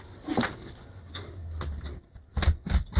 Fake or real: real